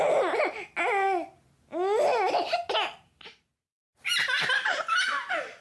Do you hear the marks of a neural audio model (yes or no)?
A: no